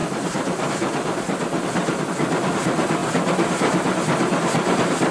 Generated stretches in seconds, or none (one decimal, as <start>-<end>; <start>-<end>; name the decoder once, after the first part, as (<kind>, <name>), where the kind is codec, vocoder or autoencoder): 0.0-2.0 (vocoder, BigVGAN v2)